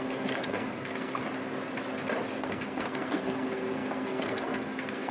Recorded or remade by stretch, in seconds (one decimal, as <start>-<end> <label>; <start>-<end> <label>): 0.0-1.2 remade; 1.2-2.4 recorded; 2.4-5.1 remade

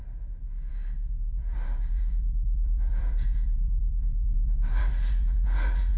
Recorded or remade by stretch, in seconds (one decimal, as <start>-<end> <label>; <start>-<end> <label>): 0.0-1.4 recorded; 1.4-5.0 remade; 5.0-6.0 recorded

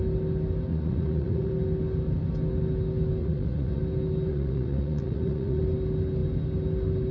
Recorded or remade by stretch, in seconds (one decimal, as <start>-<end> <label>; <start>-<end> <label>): 0.0-0.7 recorded; 0.7-1.5 remade; 1.5-3.2 recorded; 3.2-3.8 remade; 3.8-4.3 recorded; 4.3-5.6 remade; 5.6-7.1 recorded